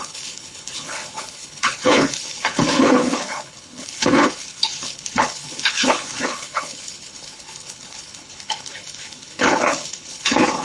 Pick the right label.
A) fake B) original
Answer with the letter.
A